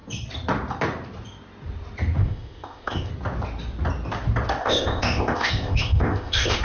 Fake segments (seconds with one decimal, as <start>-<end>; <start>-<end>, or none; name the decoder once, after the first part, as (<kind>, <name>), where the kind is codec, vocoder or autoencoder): 2.2-3.1 (codec, ZipCodec); 4.6-6.6

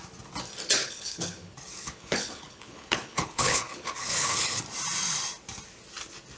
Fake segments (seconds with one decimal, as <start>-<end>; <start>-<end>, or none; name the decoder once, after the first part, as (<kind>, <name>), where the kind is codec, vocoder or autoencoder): 0.8-4.6 (codec, HILCodec)

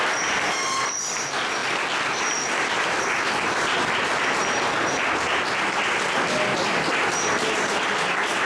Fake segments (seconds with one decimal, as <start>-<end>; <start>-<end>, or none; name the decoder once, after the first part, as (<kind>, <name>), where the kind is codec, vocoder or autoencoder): none

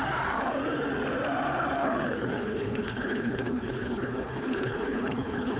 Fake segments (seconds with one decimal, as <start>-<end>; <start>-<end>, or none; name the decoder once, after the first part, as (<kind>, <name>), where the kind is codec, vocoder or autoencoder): 1.8-5.6 (codec, HILCodec)

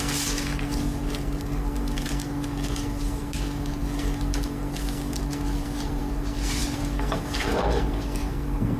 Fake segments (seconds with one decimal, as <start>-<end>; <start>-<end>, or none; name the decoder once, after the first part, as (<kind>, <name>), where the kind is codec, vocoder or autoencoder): 0.0-8.8 (codec, SNAC)

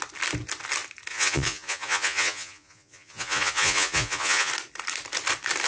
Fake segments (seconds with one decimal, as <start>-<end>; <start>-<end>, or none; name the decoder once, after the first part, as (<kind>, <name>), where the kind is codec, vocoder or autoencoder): 1.1-4.5 (vocoder, Vocos)